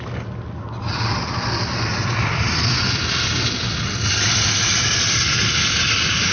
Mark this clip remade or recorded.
recorded